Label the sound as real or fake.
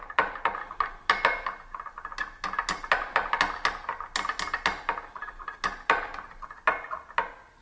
real